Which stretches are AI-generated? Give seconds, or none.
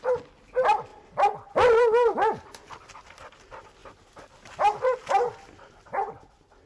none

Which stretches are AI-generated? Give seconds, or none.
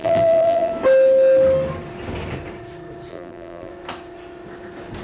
0.0-0.7 (vocoder, BigVGAN v2); 3.1-3.7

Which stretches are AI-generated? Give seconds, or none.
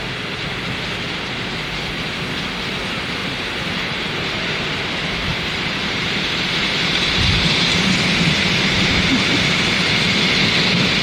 3.2-4.7 (vocoder, BigVGAN v2); 5.3-10.4